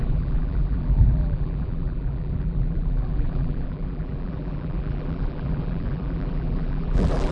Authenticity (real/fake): fake